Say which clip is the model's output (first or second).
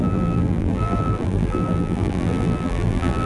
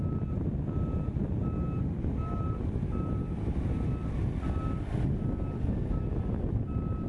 first